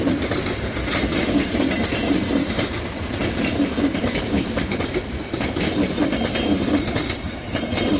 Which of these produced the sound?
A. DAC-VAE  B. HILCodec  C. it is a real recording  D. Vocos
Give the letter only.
C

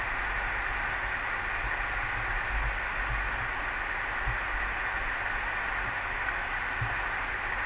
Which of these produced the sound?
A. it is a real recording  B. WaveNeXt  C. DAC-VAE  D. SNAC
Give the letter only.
A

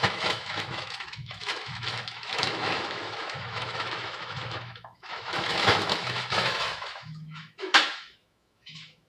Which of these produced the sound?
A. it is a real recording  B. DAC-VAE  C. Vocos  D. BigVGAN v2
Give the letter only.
B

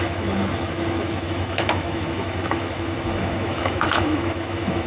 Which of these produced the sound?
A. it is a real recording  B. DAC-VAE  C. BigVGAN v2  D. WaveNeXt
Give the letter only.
B